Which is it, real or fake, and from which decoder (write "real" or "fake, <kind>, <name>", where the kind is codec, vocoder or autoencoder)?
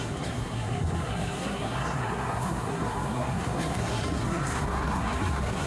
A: fake, codec, SNAC